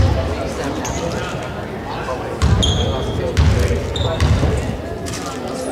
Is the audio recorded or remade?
recorded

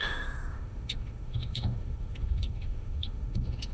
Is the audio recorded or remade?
remade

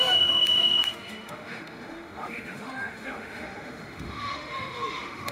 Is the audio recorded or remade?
remade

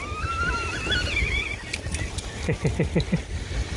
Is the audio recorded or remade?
recorded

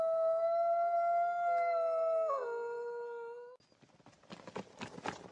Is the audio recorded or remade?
recorded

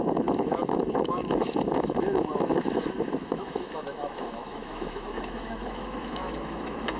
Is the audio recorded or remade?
remade